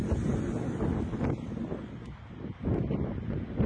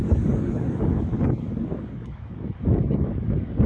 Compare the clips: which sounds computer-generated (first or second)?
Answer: second